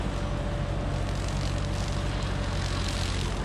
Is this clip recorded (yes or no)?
yes